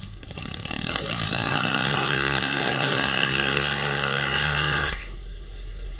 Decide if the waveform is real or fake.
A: fake